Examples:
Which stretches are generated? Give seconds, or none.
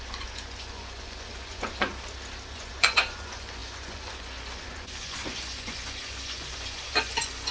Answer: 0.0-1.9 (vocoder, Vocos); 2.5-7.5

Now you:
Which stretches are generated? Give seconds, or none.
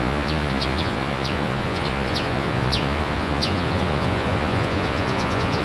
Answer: 0.0-5.6 (vocoder, Vocos)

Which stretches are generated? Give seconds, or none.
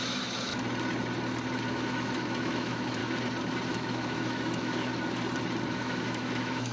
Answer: 0.0-0.5 (autoencoder, DAC-VAE); 1.7-3.0; 3.7-4.9; 5.7-6.7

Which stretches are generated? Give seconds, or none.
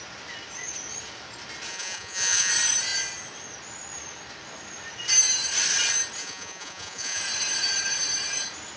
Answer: 1.7-2.5 (vocoder, Vocos); 6.2-7.2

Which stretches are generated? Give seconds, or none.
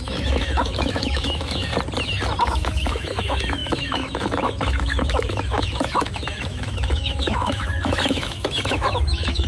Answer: 0.0-1.7 (autoencoder, DAC-VAE); 2.4-9.5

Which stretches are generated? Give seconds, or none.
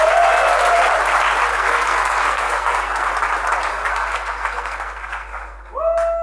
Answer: 1.5-3.1 (codec, SNAC); 3.7-5.8